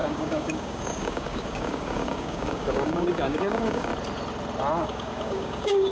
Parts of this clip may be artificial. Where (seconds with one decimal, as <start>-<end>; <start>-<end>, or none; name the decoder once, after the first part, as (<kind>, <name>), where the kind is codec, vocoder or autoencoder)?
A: 0.0-3.9 (codec, DAC); 4.8-5.9